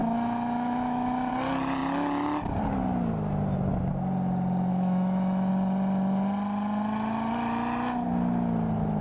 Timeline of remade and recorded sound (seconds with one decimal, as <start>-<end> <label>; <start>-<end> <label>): 0.0-1.3 remade; 1.3-4.7 recorded; 4.7-5.5 remade; 5.5-9.0 recorded

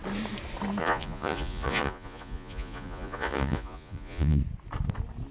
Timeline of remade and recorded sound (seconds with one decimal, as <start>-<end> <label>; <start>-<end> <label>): 0.0-0.8 recorded; 0.8-4.4 remade; 4.4-5.3 recorded

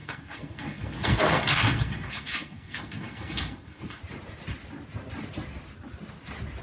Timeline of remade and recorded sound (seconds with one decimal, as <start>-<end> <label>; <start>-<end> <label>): 0.0-4.0 remade; 4.0-6.6 recorded

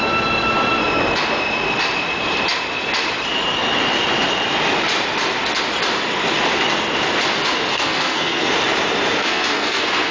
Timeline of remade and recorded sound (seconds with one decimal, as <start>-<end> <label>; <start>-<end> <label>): 0.0-7.7 recorded; 7.7-8.5 remade; 8.5-9.2 recorded; 9.2-10.1 remade

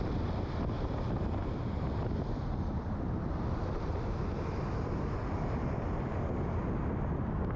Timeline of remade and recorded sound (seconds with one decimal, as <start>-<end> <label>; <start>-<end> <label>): 0.0-1.4 recorded; 1.4-6.0 remade; 6.0-7.6 recorded

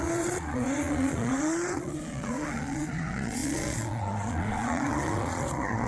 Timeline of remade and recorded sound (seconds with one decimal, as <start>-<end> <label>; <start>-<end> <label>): 0.0-5.9 remade

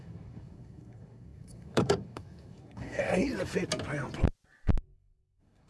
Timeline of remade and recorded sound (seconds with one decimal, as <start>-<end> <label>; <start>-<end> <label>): 0.0-3.3 remade; 3.3-4.8 recorded; 4.8-5.7 remade